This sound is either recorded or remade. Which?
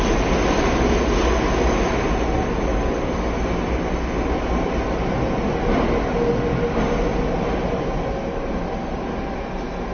recorded